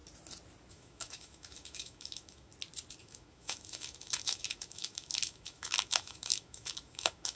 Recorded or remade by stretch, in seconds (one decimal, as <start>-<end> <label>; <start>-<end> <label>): 0.0-0.7 recorded; 0.7-2.5 remade; 2.5-3.0 recorded; 3.0-7.4 remade